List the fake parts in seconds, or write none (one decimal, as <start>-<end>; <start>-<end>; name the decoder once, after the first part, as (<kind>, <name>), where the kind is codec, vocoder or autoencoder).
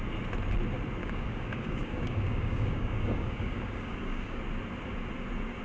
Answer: 1.0-4.4 (codec, DAC)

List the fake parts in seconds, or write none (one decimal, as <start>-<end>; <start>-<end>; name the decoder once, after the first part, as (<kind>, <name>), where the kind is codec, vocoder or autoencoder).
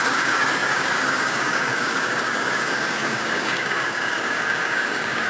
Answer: 0.0-5.3 (codec, DAC)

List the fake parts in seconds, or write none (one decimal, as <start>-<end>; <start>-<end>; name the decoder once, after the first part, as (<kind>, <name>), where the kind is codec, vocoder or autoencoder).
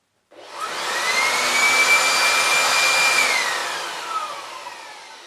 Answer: none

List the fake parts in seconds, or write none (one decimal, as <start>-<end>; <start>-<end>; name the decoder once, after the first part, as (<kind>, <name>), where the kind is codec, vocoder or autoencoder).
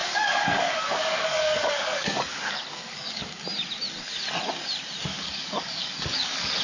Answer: 0.0-3.4 (codec, DAC); 5.1-6.6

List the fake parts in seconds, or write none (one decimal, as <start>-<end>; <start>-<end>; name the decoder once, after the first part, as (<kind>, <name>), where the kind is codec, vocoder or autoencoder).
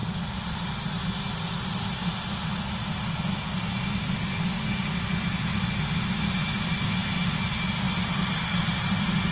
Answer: none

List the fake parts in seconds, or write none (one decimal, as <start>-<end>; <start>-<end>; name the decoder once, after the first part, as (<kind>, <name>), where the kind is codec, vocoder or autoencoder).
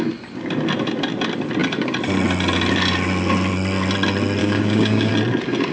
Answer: 4.4-5.1 (codec, DAC)